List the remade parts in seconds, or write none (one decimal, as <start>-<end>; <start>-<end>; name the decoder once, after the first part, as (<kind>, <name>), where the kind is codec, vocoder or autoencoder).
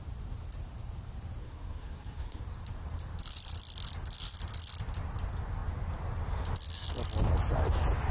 1.4-2.4 (codec, SNAC)